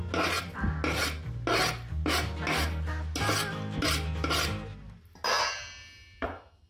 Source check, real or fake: real